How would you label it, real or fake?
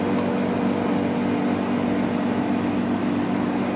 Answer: real